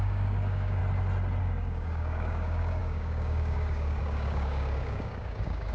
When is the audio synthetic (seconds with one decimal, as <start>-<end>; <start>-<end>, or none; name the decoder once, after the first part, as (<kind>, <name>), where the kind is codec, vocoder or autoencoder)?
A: 0.0-0.8 (codec, DAC); 1.4-5.7